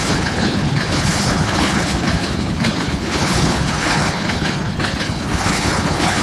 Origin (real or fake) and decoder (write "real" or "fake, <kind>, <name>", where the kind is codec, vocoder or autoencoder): fake, codec, HILCodec